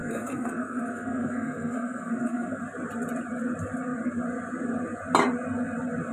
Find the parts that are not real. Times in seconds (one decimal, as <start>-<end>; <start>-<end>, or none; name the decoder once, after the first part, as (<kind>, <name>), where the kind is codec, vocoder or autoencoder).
0.0-2.6 (codec, SNAC)